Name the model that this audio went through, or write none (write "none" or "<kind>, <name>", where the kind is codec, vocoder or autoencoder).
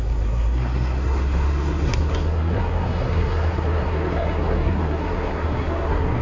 codec, SNAC